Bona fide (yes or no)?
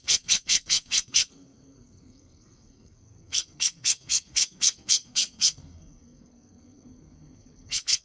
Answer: no